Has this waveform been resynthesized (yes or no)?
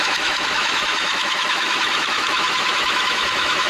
yes